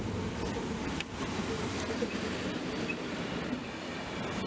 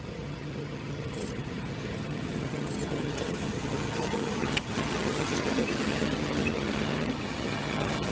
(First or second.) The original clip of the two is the first